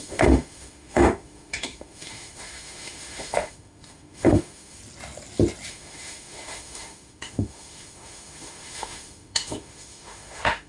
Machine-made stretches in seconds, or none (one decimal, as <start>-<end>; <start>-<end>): 0.0-4.8; 5.7-10.7

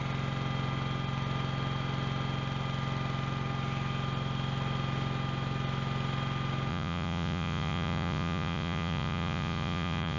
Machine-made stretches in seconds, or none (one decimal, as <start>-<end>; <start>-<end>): 6.7-10.2

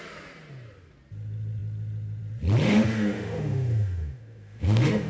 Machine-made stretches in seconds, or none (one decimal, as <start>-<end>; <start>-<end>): 2.6-5.1

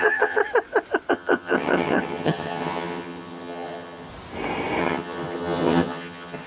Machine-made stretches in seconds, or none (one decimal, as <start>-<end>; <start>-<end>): 0.0-0.4; 1.1-4.1; 4.8-6.5

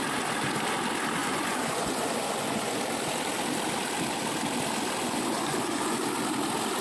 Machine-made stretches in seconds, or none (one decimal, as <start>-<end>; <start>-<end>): 1.2-2.8; 5.0-6.0

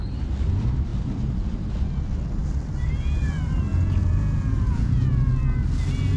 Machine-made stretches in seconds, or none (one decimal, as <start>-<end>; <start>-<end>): 3.7-5.3

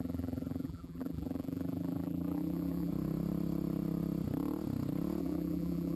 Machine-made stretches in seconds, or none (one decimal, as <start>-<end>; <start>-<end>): 0.0-2.9; 5.2-6.0

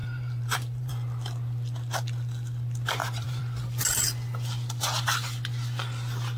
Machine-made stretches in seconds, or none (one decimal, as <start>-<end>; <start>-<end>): 0.0-0.9; 3.0-3.6